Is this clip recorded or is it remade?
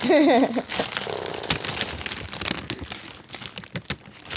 recorded